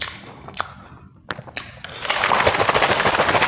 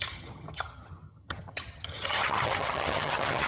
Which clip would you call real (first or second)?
first